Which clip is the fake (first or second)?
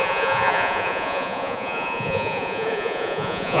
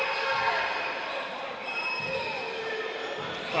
first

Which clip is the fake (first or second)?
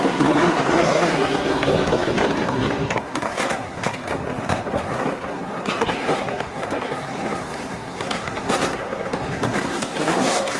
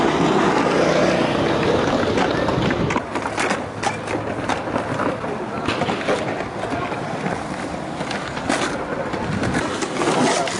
first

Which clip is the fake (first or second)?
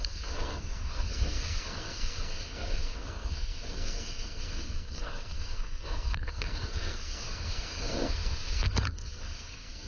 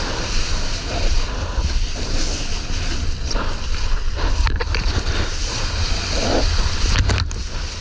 first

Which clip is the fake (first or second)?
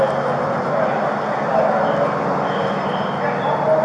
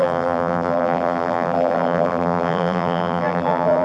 second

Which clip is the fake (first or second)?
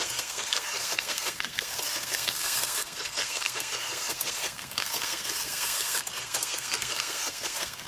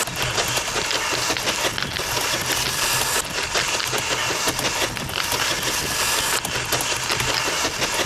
first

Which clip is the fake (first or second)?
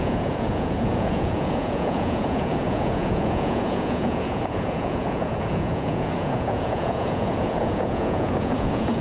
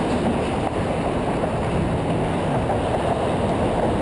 first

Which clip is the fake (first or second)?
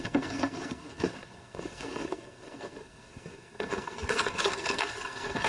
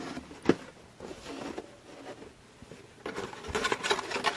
first